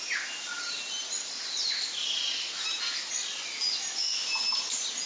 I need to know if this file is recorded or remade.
recorded